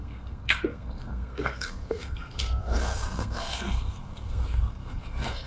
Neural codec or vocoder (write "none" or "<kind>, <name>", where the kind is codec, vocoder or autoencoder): codec, SNAC